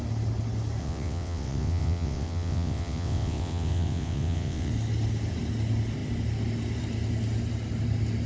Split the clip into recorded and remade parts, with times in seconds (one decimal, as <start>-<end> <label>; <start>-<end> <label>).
0.0-0.8 recorded; 0.8-4.7 remade; 4.7-8.3 recorded